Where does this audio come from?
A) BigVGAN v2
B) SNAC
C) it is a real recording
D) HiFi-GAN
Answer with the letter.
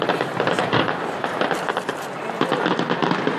A